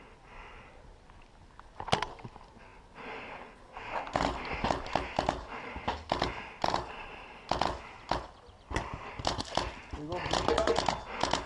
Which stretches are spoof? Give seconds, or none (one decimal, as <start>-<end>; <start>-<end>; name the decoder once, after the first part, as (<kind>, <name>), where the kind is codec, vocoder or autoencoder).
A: none